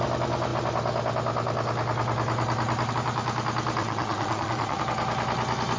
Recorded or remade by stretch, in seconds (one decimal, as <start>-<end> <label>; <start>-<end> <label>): 0.0-3.8 recorded; 3.8-4.8 remade; 4.8-5.8 recorded

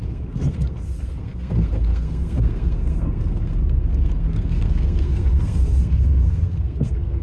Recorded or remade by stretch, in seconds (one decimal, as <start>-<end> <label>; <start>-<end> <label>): 0.0-7.2 remade

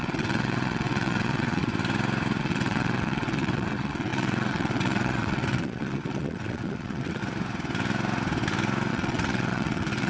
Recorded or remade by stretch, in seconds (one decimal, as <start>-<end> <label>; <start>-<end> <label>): 0.0-1.7 remade; 1.7-2.4 recorded; 2.4-7.2 remade; 7.2-8.9 recorded; 8.9-10.1 remade

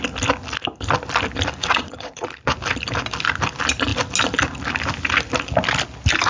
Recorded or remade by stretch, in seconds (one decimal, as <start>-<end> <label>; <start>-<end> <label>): 0.0-1.6 recorded; 1.6-2.3 remade; 2.3-6.3 recorded